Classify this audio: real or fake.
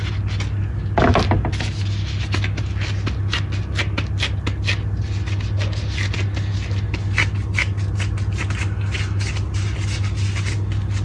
real